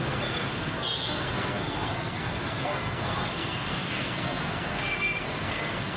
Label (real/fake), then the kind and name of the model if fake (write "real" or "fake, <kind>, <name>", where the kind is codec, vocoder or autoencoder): fake, codec, SNAC